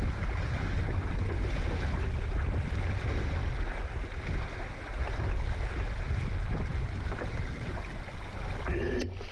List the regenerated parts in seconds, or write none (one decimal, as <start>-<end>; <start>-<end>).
6.7-7.9